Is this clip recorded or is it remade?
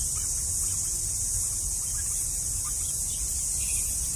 recorded